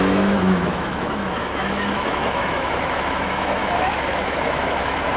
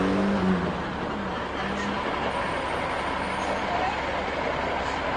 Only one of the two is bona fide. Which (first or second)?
second